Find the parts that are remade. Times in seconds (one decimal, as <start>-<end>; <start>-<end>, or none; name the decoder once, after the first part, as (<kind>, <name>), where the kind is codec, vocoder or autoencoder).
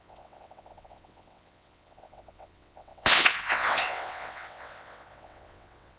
0.0-6.0 (vocoder, WaveNeXt)